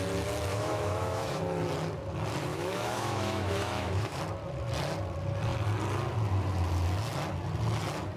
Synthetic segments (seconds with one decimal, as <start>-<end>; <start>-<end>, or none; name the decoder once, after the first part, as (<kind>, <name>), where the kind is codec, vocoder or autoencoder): 0.5-1.4 (autoencoder, DAC-VAE); 2.5-4.2